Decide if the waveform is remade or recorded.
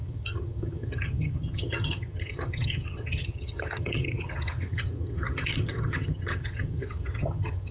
remade